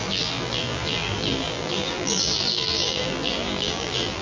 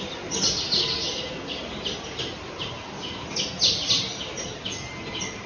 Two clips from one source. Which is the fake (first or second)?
first